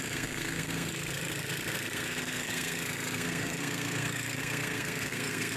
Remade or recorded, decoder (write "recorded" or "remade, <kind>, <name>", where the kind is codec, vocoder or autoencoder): remade, codec, SNAC